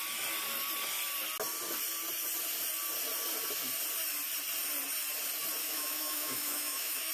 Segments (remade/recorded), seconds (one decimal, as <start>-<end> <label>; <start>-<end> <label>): 0.0-5.6 recorded; 5.6-7.1 remade

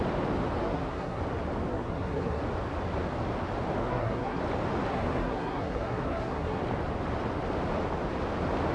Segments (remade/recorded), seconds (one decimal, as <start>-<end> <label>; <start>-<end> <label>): 0.0-0.6 recorded; 0.6-1.2 remade; 1.2-1.7 recorded; 1.7-2.4 remade; 2.4-3.8 recorded; 3.8-4.4 remade; 4.4-4.9 recorded; 4.9-6.6 remade; 6.6-8.7 recorded

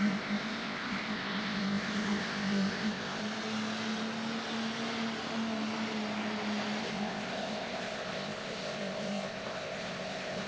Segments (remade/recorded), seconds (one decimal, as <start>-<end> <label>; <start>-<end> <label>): 0.0-3.2 remade; 3.2-6.8 recorded; 6.8-10.5 remade

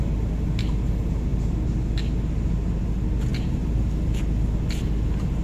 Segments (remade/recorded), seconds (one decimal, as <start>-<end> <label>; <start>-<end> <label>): 0.0-3.3 recorded; 3.3-4.2 remade; 4.2-5.4 recorded